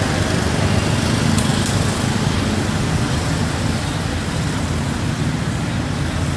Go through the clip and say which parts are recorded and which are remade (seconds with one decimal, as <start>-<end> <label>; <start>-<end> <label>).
0.0-6.4 recorded